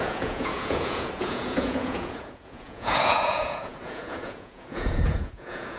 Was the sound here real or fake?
fake